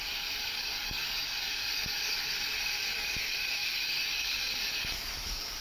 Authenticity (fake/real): fake